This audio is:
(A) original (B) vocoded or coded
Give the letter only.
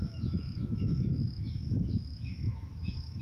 B